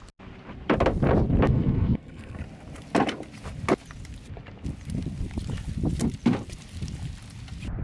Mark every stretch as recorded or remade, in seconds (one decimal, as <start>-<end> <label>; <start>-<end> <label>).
0.0-1.5 recorded; 1.5-2.4 remade; 2.4-7.8 recorded